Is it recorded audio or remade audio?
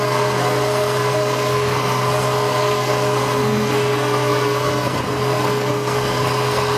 remade